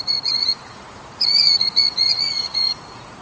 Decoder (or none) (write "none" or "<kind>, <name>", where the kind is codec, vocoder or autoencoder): vocoder, Vocos